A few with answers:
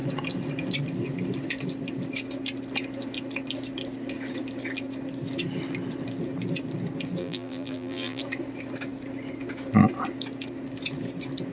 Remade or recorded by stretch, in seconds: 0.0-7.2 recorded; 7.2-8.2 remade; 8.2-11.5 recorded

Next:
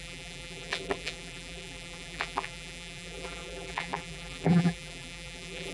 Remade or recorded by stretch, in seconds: 0.0-5.7 remade